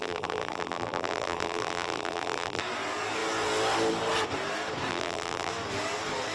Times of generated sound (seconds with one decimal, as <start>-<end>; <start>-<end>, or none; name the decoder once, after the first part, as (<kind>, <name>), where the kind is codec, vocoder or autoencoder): 0.0-2.6 (vocoder, BigVGAN v2); 4.9-5.5